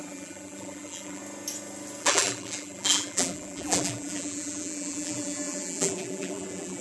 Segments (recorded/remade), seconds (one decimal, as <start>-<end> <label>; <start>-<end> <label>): 0.0-1.2 remade; 1.2-2.0 recorded; 2.0-6.8 remade